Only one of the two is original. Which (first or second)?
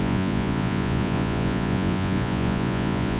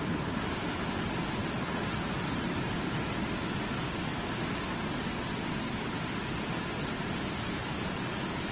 second